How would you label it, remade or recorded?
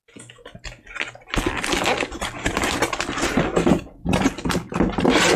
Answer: recorded